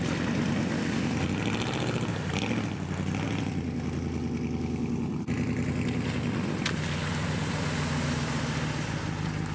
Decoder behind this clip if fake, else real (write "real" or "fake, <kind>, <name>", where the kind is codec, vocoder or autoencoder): real